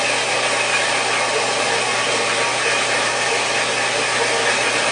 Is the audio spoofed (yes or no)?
no